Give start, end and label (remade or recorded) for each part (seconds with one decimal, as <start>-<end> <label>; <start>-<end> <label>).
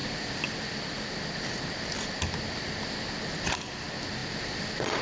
0.0-5.0 recorded